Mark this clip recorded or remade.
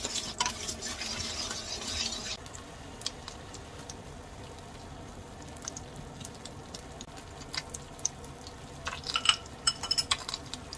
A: recorded